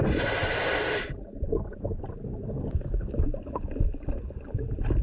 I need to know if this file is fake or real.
real